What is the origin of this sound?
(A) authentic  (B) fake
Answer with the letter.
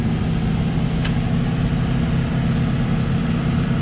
A